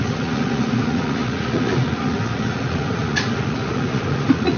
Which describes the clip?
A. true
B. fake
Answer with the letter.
B